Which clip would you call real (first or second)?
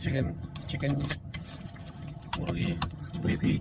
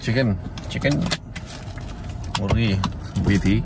second